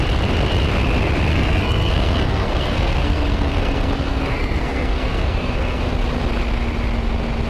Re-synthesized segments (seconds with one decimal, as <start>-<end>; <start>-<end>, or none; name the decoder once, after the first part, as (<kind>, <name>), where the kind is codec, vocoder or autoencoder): 1.3-5.8 (codec, SNAC)